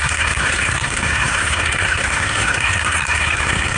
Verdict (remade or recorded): remade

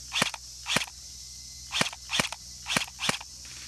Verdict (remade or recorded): recorded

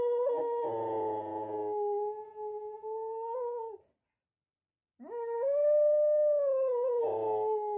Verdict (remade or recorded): recorded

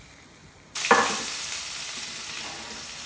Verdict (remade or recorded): recorded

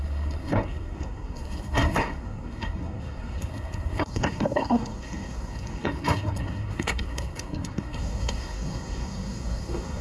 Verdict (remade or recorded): remade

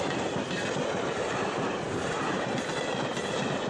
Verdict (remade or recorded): recorded